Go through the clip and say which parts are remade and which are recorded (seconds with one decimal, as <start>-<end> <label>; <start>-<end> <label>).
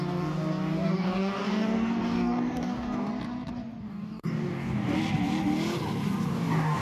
0.0-3.1 remade; 3.1-3.8 recorded; 3.8-5.0 remade; 5.0-6.3 recorded; 6.3-6.8 remade